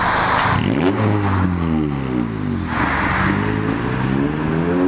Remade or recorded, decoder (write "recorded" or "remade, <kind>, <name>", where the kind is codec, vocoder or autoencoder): recorded